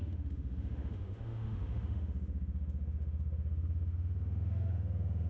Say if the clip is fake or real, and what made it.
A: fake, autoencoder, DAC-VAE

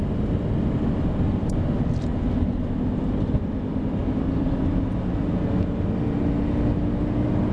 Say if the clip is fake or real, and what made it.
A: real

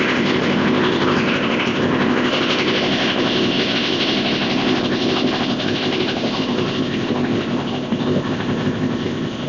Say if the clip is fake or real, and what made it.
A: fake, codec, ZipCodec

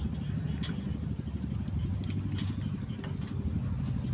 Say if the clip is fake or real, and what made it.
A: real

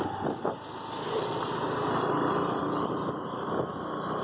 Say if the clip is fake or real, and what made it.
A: real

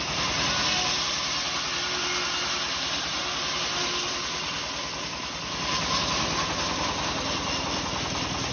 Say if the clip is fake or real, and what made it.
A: real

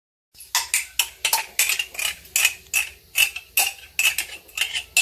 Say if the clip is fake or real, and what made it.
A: real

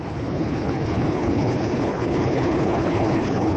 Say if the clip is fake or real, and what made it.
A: fake, codec, HILCodec